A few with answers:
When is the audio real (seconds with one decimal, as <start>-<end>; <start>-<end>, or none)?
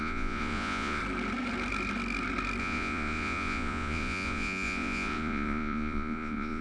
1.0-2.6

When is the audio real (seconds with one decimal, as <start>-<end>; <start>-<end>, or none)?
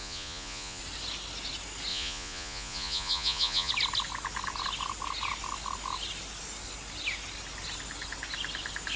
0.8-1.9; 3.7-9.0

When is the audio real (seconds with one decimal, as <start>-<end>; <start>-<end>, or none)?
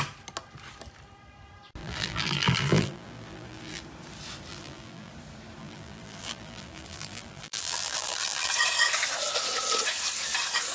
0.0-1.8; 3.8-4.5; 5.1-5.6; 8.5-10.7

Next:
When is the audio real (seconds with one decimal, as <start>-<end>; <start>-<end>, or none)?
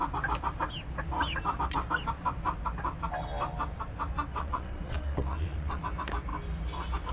0.0-4.3; 5.8-7.1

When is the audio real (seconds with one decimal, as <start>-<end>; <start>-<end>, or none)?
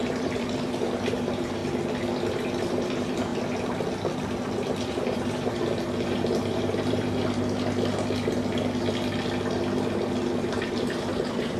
1.6-2.3; 3.3-4.9; 7.2-10.5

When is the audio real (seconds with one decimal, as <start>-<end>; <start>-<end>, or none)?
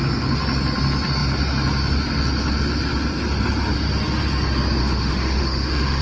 0.0-4.8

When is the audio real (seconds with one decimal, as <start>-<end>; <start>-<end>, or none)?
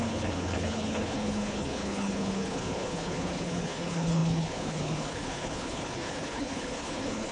none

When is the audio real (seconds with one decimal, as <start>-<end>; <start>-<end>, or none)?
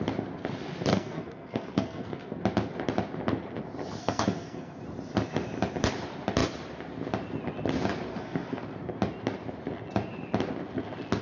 0.0-0.9; 2.4-4.0; 4.8-8.1; 8.6-11.2